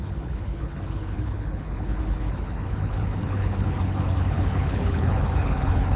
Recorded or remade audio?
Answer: remade